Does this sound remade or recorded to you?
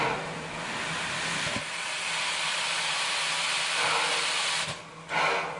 recorded